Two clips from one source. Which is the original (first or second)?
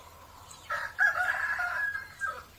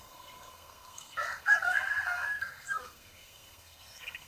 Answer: first